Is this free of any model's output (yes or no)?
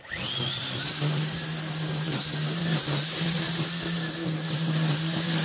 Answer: yes